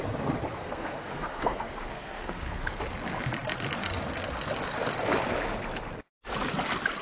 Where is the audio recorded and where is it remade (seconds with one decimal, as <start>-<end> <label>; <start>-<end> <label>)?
0.0-0.6 recorded; 0.6-2.8 remade; 2.8-7.0 recorded

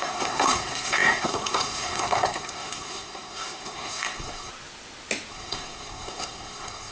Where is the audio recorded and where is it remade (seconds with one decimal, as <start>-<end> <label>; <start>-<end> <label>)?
0.0-4.5 remade; 4.5-5.3 recorded; 5.3-6.9 remade

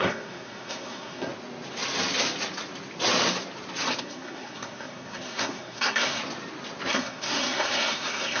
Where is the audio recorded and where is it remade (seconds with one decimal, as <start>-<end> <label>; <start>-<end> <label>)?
0.0-1.3 remade; 1.3-4.0 recorded; 4.0-6.2 remade; 6.2-6.9 recorded; 6.9-8.4 remade

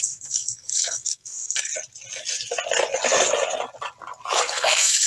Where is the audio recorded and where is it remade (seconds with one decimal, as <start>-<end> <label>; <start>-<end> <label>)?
0.0-1.7 remade; 1.7-4.4 recorded; 4.4-5.1 remade

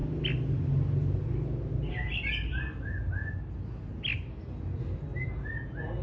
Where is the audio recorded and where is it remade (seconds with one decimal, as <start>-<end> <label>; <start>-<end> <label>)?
0.0-6.0 recorded

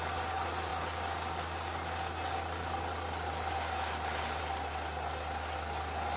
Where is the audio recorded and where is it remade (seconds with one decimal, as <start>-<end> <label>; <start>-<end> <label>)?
0.0-6.2 recorded